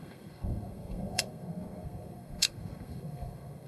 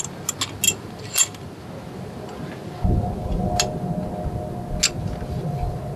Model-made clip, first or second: first